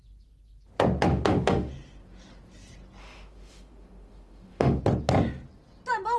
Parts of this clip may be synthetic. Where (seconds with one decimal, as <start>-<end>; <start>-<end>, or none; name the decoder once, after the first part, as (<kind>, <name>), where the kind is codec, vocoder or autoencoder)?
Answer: 1.1-1.7 (autoencoder, DAC-VAE); 3.0-4.8